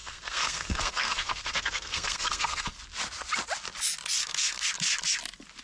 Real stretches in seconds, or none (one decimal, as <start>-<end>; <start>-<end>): 2.8-4.2; 4.7-5.6